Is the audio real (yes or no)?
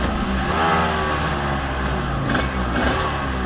yes